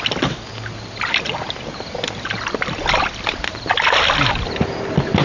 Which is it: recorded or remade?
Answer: recorded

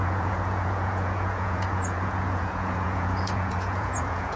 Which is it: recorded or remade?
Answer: remade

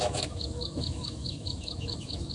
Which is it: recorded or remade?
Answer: remade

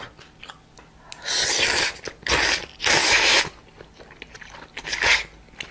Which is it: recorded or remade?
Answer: recorded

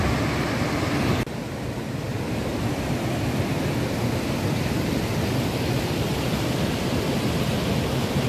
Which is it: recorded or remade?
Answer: recorded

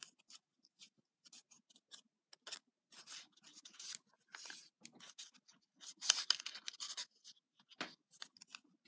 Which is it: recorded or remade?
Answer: recorded